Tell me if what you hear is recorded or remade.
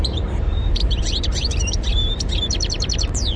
remade